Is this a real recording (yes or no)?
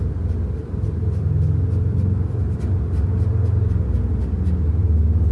yes